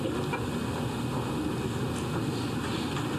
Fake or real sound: real